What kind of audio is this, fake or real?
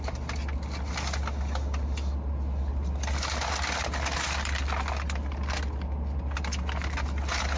real